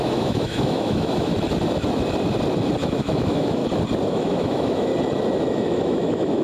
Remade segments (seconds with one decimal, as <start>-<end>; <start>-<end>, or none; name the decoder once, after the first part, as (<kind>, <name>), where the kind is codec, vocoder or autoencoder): 0.0-1.3 (autoencoder, DAC-VAE); 2.8-3.6; 4.1-4.9; 5.4-6.4